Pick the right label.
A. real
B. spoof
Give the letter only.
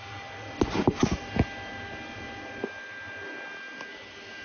A